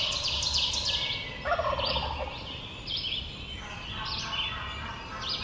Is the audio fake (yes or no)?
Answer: no